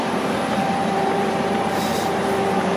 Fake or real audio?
fake